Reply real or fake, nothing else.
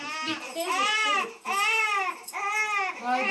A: real